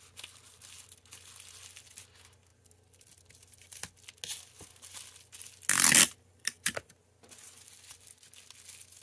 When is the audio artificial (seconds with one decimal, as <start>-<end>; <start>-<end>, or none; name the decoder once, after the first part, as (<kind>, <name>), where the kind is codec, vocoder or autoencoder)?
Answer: none